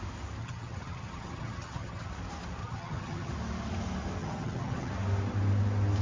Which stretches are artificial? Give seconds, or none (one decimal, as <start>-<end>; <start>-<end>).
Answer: 0.4-2.1; 2.6-3.3; 4.2-4.9

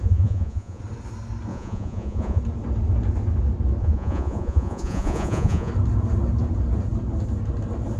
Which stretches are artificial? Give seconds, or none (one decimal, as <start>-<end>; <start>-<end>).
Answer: 0.0-0.8; 1.5-2.4; 3.8-5.7

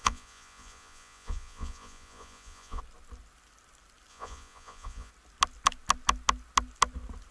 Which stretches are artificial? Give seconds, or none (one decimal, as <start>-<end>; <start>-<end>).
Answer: 0.0-2.8; 4.1-5.1

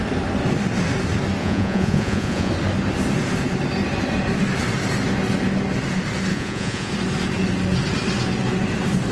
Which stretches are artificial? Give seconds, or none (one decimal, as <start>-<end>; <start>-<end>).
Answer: 1.4-2.5; 6.3-6.9

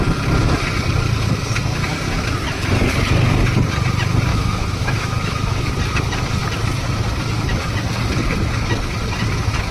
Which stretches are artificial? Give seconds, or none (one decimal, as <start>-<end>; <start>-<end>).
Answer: 4.3-5.7